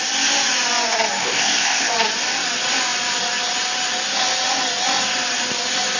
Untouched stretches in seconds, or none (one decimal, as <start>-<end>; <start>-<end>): 0.0-1.2; 1.9-6.0